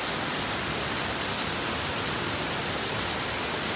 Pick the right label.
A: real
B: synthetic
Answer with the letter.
A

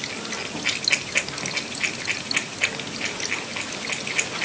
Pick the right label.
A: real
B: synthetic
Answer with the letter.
A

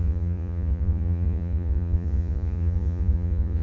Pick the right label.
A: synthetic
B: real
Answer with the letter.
A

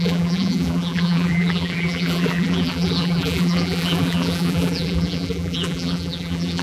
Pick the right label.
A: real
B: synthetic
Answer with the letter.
B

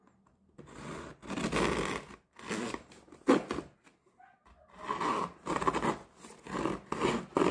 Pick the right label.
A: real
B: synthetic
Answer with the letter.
A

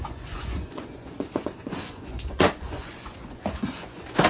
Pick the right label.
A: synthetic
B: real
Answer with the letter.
A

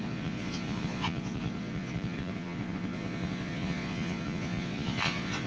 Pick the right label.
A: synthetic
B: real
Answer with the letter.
A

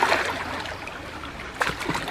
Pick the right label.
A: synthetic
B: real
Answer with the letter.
B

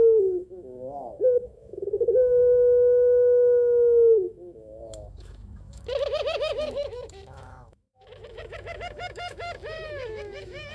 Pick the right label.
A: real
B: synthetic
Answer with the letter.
B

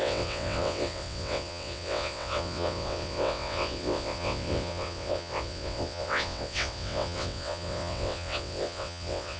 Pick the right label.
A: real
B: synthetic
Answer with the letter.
B